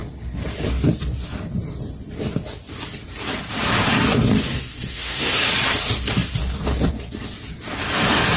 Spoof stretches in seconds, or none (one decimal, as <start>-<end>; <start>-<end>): 4.5-5.4